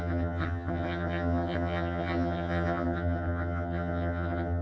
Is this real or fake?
fake